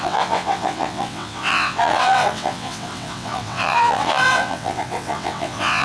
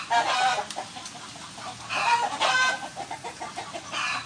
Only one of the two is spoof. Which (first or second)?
first